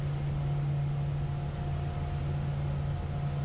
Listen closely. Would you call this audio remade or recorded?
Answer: recorded